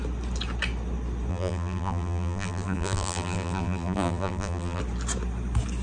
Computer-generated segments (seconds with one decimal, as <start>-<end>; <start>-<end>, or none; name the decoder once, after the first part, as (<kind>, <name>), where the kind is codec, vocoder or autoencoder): 1.3-4.8 (vocoder, BigVGAN v2)